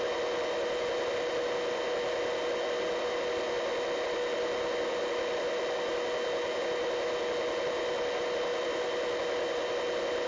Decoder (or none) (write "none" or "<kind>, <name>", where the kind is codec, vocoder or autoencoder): none